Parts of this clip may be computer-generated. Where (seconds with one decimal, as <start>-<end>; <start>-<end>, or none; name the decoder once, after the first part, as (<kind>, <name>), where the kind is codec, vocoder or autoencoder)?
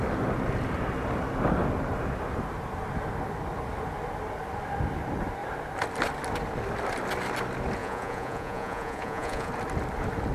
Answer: 7.8-9.5 (vocoder, Vocos)